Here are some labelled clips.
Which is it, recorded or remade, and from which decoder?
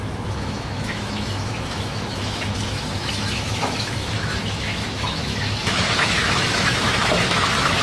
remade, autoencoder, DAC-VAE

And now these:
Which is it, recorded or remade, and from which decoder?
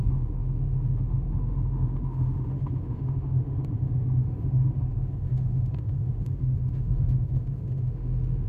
remade, autoencoder, DAC-VAE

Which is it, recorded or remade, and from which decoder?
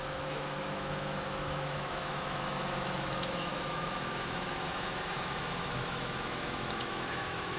remade, autoencoder, DAC-VAE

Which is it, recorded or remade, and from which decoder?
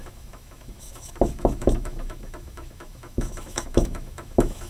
remade, autoencoder, DAC-VAE